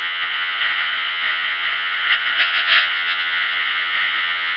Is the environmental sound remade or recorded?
remade